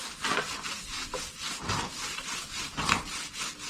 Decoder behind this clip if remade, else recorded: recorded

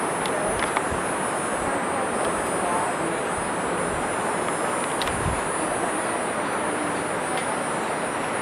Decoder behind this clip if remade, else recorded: recorded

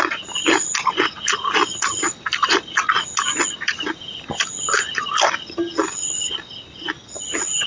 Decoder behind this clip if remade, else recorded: recorded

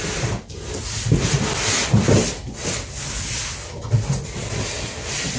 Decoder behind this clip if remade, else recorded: recorded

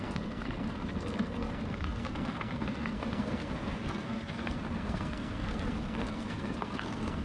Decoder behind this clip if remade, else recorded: remade, codec, SNAC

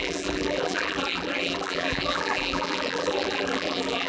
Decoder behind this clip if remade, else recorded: remade, vocoder, BigVGAN v2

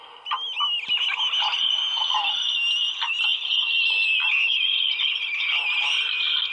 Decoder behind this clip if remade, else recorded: recorded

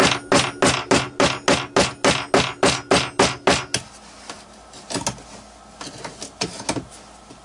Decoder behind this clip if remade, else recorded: recorded